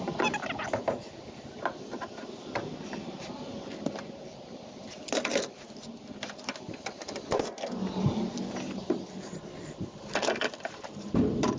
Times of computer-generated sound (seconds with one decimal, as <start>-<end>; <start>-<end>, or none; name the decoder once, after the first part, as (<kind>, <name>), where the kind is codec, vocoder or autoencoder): 0.0-5.3 (vocoder, BigVGAN v2); 10.6-11.6